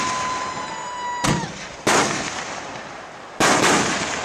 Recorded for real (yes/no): yes